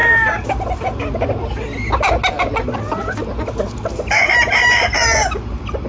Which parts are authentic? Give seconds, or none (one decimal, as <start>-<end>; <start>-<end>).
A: 0.0-5.9